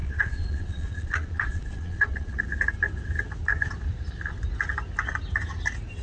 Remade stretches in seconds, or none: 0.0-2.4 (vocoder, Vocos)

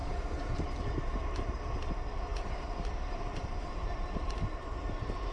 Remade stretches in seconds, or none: 0.0-1.7 (vocoder, BigVGAN v2); 2.3-4.7

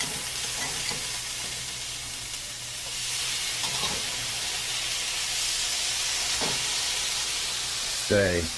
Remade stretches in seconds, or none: 0.0-1.0 (vocoder, BigVGAN v2); 2.4-4.6; 6.8-8.6

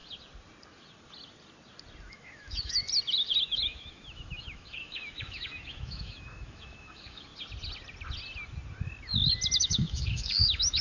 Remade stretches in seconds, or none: 2.1-2.8 (autoencoder, DAC-VAE); 3.4-7.3; 9.6-10.8

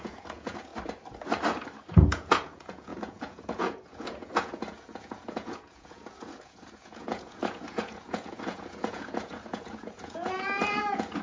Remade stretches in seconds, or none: 0.0-0.7 (vocoder, Vocos); 1.9-11.2

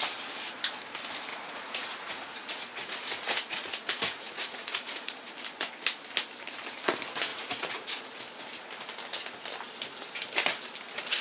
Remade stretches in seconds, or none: 1.3-5.3 (vocoder, Vocos); 7.3-8.2

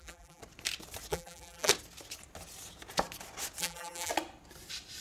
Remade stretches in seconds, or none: 0.0-0.4 (vocoder, BigVGAN v2); 1.1-1.7; 3.6-4.1